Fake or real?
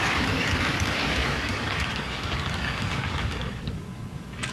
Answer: fake